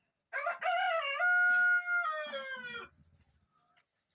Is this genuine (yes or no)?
yes